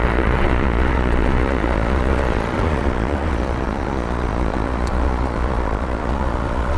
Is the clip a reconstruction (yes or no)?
yes